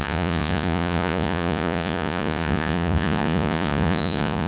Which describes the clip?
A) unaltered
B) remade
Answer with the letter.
B